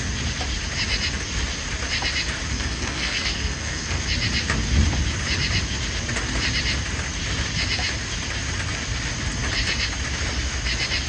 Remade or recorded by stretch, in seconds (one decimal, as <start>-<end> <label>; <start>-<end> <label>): 0.0-2.5 recorded; 2.5-4.0 remade; 4.0-11.1 recorded